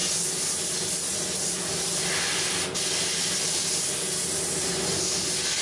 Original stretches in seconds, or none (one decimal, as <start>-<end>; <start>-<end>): 0.0-5.6